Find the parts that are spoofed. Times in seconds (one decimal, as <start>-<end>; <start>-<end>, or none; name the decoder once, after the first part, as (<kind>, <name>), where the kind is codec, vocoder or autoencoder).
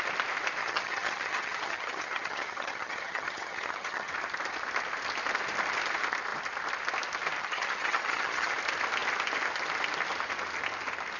0.6-4.1 (vocoder, HiFi-GAN); 7.4-8.5